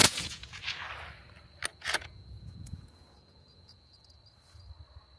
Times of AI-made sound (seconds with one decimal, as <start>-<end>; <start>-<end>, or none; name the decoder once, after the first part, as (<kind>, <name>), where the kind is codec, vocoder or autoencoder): 0.0-0.6 (vocoder, Vocos); 1.7-4.2